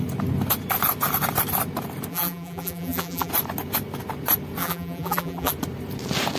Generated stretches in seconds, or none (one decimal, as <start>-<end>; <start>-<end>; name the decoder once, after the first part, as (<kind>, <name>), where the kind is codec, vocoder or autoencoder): 2.1-3.3 (vocoder, BigVGAN v2); 4.6-5.5